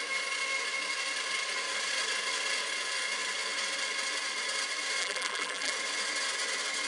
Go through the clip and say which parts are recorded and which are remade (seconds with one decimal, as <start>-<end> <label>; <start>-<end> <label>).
0.0-5.0 recorded; 5.0-5.7 remade; 5.7-6.9 recorded